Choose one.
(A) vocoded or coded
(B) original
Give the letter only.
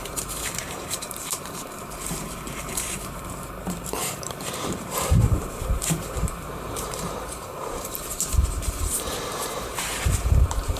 A